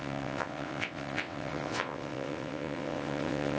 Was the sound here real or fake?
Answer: fake